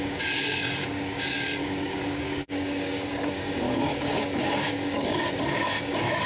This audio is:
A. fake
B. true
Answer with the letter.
A